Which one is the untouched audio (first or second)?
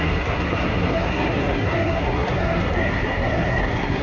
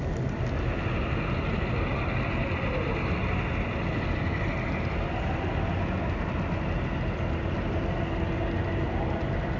second